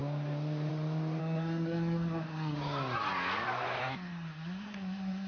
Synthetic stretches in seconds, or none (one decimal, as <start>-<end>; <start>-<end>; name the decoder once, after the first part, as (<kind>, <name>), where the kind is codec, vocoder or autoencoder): 1.2-2.6 (codec, SNAC); 3.8-5.3